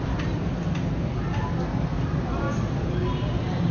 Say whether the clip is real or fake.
real